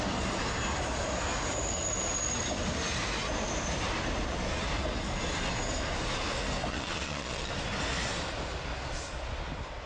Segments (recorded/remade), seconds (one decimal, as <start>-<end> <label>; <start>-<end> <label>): 0.0-6.7 recorded; 6.7-7.5 remade; 7.5-9.9 recorded